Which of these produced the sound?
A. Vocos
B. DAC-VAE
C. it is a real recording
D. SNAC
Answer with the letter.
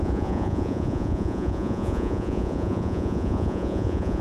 A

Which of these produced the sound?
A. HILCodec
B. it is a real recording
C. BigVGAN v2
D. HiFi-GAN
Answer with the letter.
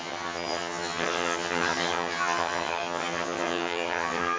D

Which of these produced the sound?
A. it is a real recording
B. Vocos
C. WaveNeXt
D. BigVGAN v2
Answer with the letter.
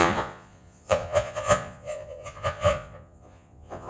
B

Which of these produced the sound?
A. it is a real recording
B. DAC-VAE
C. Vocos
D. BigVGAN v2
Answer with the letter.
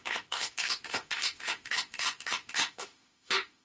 B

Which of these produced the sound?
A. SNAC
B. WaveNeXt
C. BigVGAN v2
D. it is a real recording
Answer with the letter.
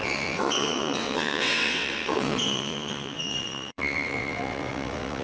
B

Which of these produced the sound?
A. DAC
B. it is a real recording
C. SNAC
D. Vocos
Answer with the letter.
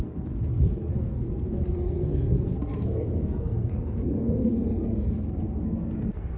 C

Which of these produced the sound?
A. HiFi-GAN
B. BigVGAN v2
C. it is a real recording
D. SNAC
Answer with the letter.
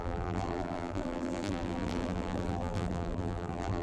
B